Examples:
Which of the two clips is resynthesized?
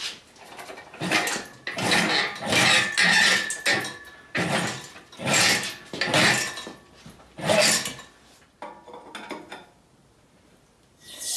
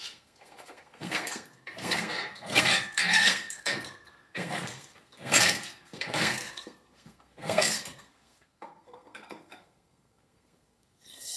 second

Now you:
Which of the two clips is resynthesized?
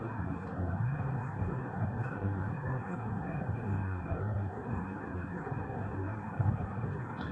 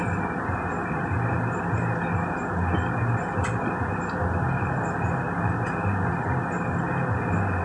first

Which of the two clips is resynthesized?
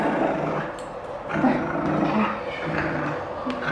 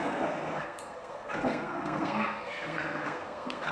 second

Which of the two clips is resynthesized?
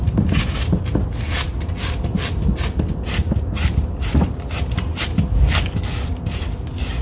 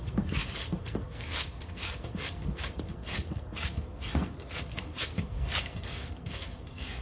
second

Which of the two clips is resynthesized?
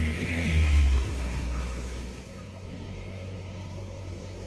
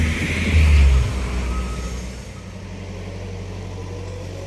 first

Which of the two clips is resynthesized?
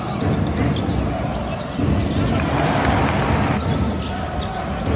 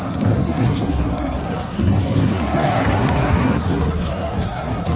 second